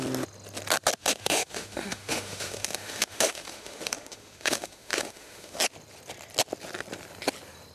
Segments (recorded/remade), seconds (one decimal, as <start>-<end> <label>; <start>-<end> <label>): 0.0-1.0 recorded; 1.0-5.6 remade; 5.6-7.7 recorded